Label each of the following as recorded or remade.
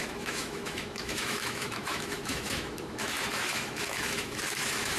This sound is remade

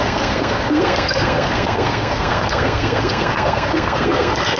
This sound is remade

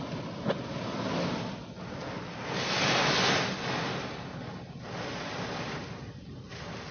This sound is recorded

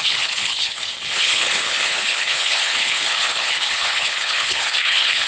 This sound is remade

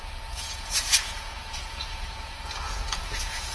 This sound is remade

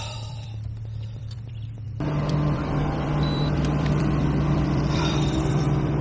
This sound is remade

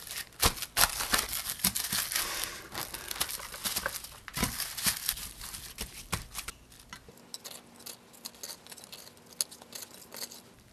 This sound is recorded